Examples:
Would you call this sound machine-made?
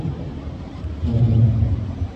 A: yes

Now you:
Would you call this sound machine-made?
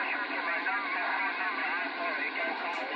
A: yes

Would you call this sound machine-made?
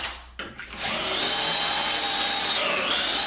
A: no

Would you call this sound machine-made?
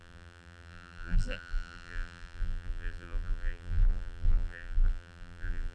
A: yes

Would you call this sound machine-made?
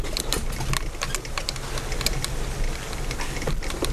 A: no